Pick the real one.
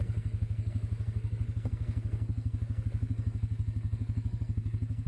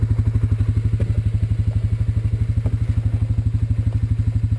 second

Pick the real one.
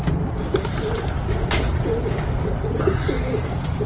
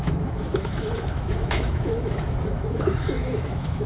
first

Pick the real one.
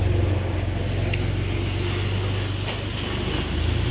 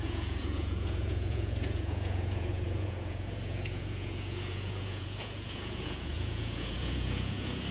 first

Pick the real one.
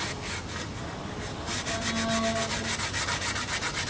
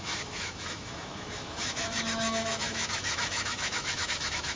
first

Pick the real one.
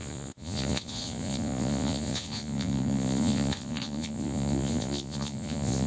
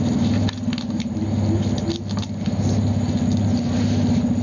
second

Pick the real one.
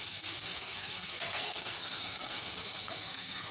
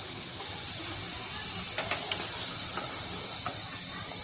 second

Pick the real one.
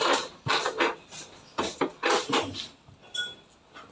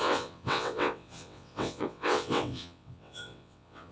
first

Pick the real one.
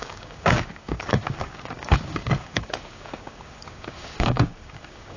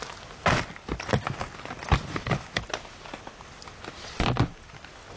second